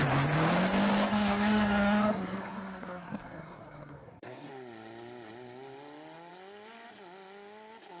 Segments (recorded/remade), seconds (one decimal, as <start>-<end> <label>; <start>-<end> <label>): 0.0-1.1 recorded; 1.1-4.5 remade; 4.5-8.0 recorded